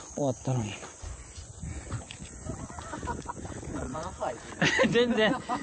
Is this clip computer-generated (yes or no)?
yes